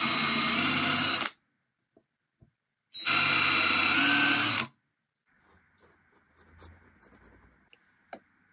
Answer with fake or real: real